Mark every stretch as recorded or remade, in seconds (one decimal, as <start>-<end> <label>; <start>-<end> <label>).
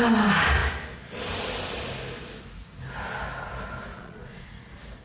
0.0-3.9 recorded; 3.9-4.5 remade; 4.5-5.0 recorded